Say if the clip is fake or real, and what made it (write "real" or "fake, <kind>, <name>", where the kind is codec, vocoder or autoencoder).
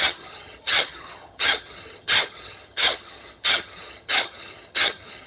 fake, vocoder, HiFi-GAN